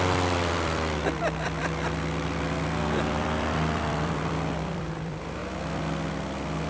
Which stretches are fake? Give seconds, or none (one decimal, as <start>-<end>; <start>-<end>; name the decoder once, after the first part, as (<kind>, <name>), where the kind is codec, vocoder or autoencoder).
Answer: 0.0-5.4 (vocoder, BigVGAN v2)